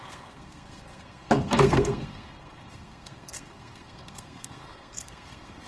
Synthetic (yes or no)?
yes